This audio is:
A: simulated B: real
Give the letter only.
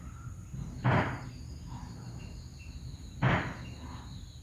B